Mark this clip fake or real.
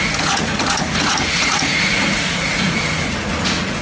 fake